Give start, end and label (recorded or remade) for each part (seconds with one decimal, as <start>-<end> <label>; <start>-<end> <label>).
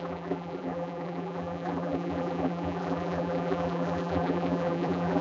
0.0-5.2 remade